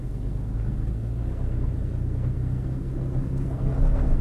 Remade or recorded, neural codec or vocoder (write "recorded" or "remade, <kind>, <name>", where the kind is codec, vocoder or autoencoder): remade, codec, SNAC